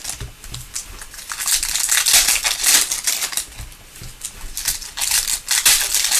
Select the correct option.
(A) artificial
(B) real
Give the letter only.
B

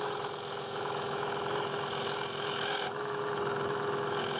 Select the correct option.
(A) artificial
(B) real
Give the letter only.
A